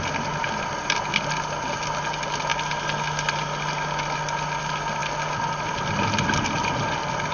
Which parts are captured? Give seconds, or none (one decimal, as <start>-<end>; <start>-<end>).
0.0-7.3